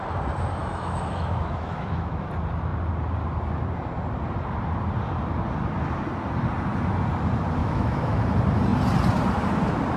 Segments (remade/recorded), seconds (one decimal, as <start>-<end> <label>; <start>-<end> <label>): 0.0-0.6 recorded; 0.6-2.3 remade; 2.3-7.6 recorded; 7.6-8.2 remade; 8.2-10.0 recorded